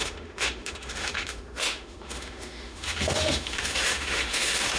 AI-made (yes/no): yes